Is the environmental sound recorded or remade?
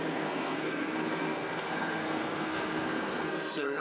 remade